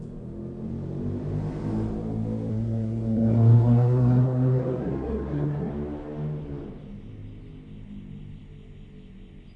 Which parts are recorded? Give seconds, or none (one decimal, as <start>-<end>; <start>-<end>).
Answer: 0.0-2.5; 5.7-9.6